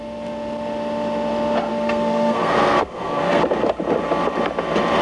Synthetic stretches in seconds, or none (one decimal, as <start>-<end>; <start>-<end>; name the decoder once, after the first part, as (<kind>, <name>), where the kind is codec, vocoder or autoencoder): 1.7-3.4 (codec, SNAC)